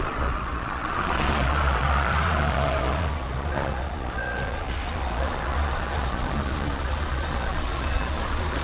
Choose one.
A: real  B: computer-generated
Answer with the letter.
B